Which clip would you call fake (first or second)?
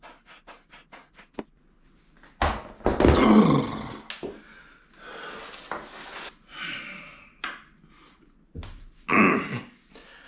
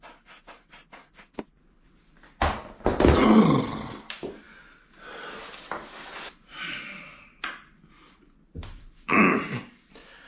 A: second